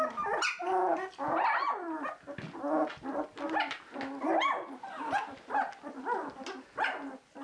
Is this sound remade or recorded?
recorded